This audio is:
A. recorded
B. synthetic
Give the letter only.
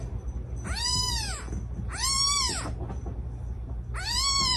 A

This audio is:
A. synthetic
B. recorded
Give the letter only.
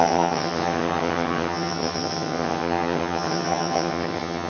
A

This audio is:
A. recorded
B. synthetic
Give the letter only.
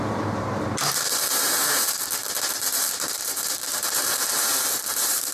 B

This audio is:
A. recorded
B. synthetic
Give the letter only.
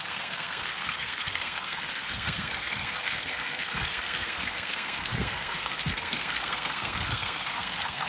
B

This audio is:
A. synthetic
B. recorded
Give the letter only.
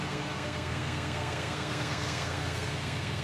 A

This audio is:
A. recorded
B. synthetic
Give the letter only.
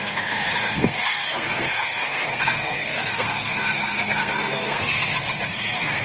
B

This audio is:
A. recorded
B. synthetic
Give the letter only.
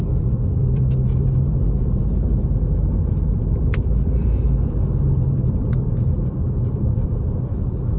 B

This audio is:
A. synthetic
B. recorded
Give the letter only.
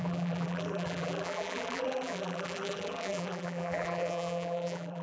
A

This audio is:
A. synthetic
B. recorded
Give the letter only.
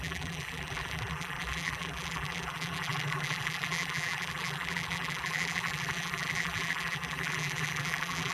A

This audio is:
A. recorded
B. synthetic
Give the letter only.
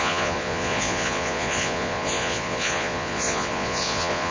B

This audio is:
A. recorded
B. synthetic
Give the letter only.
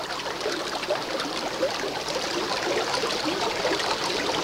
A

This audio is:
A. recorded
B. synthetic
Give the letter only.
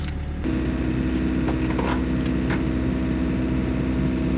A